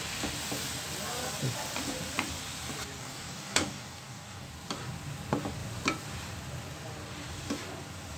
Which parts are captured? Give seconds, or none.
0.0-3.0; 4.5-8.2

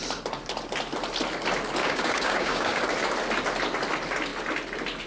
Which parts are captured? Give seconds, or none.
0.0-1.8; 2.8-5.1

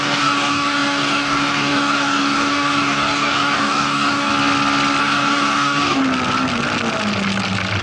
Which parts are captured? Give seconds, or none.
4.3-5.0; 6.0-7.8

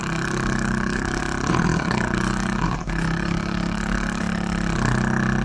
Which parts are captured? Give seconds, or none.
1.2-1.7; 4.2-5.4

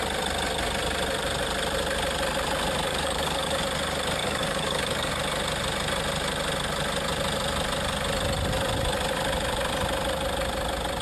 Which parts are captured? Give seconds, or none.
0.0-2.9; 3.6-4.2; 5.1-11.0

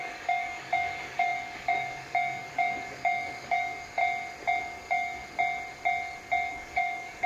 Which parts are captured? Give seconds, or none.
4.0-4.6; 5.2-6.5

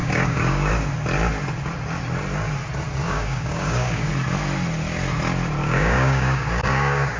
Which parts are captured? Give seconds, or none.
0.7-3.0; 4.1-5.6